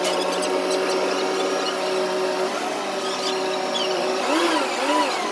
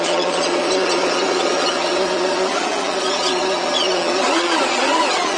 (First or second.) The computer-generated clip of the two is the second